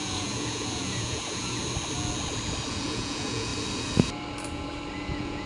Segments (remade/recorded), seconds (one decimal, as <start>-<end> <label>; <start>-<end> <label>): 0.0-1.6 remade; 1.6-2.7 recorded; 2.7-3.5 remade; 3.5-5.0 recorded; 5.0-5.5 remade